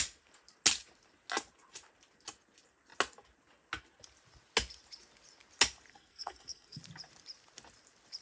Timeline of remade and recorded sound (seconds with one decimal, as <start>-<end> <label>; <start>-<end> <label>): 0.0-5.9 recorded; 5.9-6.8 remade; 6.8-8.2 recorded